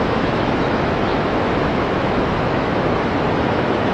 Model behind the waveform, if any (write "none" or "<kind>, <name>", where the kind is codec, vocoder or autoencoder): autoencoder, DAC-VAE